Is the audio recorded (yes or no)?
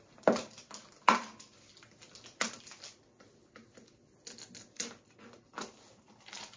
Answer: yes